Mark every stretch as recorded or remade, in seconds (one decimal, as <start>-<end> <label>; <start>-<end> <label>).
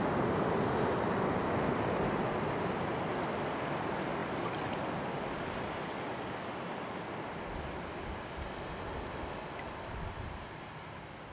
0.0-11.3 remade